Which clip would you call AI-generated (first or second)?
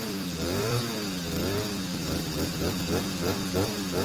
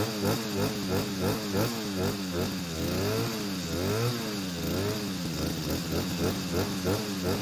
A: first